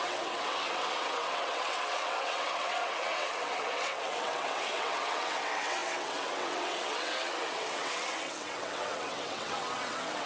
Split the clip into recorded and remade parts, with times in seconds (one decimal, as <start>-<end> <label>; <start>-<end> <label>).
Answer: 0.0-10.3 remade